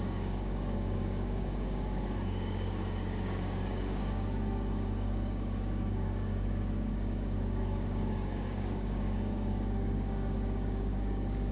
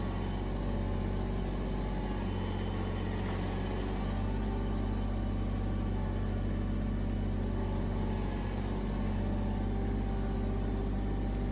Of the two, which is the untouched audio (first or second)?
second